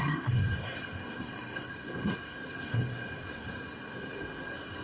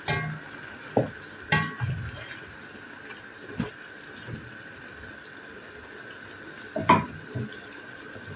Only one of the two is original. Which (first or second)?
second